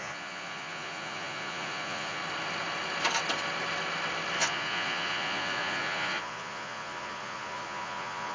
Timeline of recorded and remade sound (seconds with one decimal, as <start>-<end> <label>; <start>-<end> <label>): 0.0-2.2 remade; 2.2-4.4 recorded; 4.4-8.3 remade